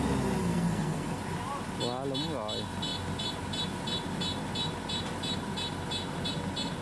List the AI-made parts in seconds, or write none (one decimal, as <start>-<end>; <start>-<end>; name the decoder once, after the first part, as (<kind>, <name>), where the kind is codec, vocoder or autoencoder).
0.4-1.2 (codec, SNAC)